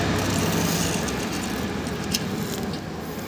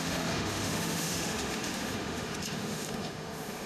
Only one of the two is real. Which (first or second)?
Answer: first